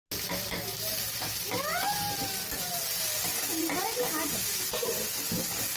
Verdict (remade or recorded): recorded